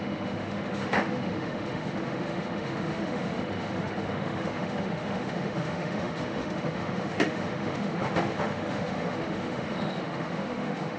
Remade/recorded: remade